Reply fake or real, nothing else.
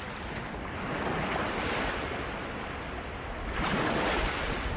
real